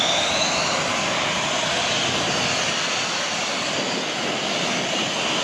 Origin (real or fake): real